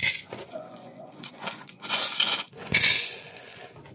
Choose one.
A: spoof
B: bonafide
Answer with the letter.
A